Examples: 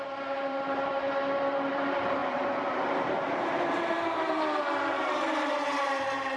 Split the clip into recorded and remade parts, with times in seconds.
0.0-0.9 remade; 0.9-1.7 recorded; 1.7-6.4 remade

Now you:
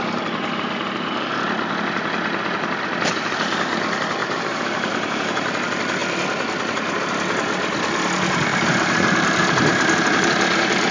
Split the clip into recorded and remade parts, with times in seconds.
0.0-4.2 recorded; 4.2-5.5 remade; 5.5-8.5 recorded; 8.5-10.3 remade; 10.3-10.9 recorded

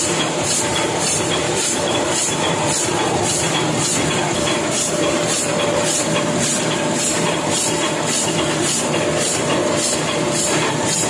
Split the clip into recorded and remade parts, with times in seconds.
0.0-9.6 remade; 9.6-10.4 recorded; 10.4-11.1 remade

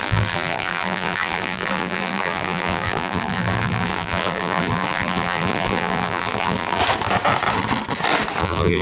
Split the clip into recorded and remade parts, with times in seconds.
0.0-6.8 remade; 6.8-8.4 recorded; 8.4-8.8 remade

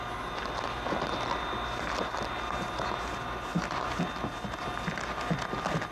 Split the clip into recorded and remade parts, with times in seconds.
0.0-3.5 recorded; 3.5-4.0 remade; 4.0-5.9 recorded

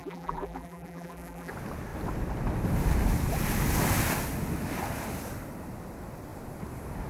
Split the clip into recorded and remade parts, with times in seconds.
0.0-1.5 remade; 1.5-7.1 recorded